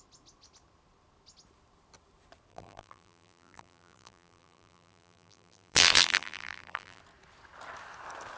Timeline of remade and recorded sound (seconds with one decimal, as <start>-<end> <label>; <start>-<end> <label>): 0.0-2.5 recorded; 2.5-7.0 remade; 7.0-8.4 recorded